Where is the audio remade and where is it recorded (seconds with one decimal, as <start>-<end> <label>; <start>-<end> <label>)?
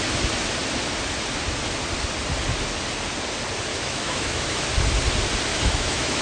0.0-3.7 recorded; 3.7-4.7 remade; 4.7-5.5 recorded; 5.5-6.2 remade